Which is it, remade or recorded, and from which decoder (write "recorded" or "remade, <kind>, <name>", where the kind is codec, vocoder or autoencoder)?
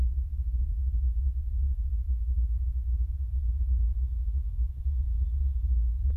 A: recorded